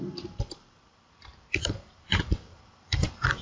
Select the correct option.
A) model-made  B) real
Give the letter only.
A